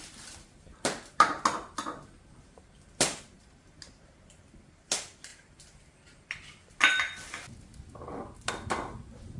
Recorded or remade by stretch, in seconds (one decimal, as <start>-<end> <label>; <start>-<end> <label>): 0.0-9.4 recorded